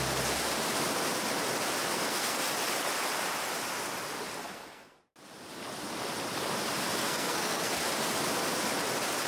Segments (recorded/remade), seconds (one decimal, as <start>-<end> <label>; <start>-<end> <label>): 0.0-1.9 recorded; 1.9-2.4 remade; 2.4-4.4 recorded; 4.4-5.0 remade; 5.0-7.0 recorded; 7.0-7.7 remade; 7.7-9.3 recorded